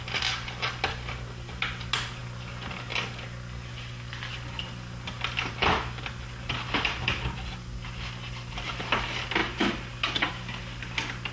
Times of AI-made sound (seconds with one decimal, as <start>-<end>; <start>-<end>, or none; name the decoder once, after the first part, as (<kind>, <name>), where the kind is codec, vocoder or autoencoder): none